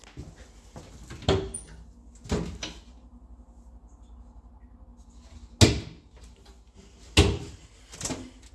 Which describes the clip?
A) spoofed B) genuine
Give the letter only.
B